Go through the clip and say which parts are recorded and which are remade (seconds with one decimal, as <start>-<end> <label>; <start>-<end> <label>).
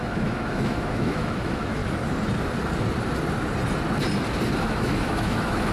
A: 0.0-1.8 remade; 1.8-4.6 recorded; 4.6-5.7 remade